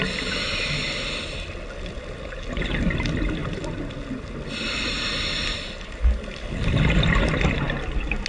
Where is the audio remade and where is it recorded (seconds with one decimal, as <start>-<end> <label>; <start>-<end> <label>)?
0.0-8.3 recorded